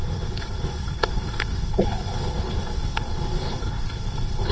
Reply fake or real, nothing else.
fake